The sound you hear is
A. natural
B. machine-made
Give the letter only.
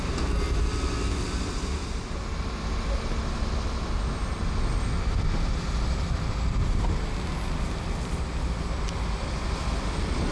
A